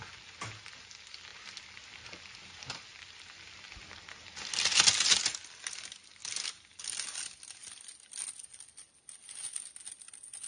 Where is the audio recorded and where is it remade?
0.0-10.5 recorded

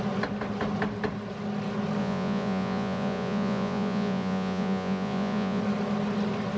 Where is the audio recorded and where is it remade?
0.0-2.0 recorded; 2.0-5.6 remade; 5.6-6.6 recorded

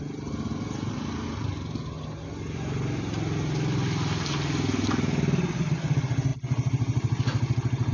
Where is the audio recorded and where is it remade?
0.0-7.9 recorded

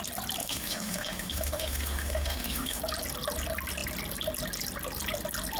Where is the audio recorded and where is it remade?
0.0-0.4 recorded; 0.4-2.8 remade; 2.8-5.6 recorded

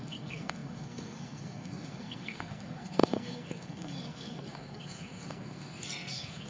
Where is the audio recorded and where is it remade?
0.0-6.5 remade

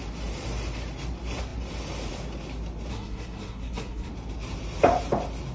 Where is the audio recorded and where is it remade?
0.0-2.9 recorded; 2.9-4.1 remade; 4.1-5.5 recorded

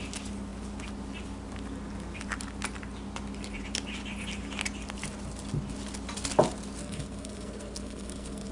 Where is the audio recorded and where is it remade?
0.0-6.8 recorded; 6.8-8.5 remade